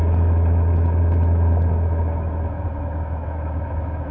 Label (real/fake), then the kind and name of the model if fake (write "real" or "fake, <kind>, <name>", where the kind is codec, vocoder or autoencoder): fake, autoencoder, DAC-VAE